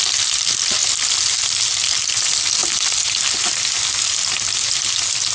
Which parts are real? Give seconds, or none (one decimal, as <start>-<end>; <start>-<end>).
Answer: 0.0-5.3